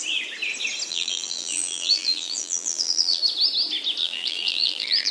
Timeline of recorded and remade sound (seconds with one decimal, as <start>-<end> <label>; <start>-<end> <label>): 0.0-0.9 recorded; 0.9-3.2 remade; 3.2-4.0 recorded; 4.0-5.1 remade